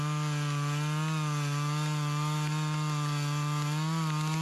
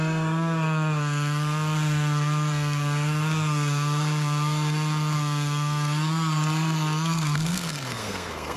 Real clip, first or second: first